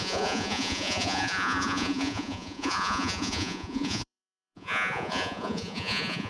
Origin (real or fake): fake